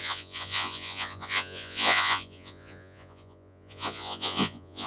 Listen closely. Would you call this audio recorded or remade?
remade